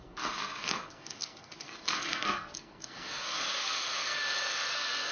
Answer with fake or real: fake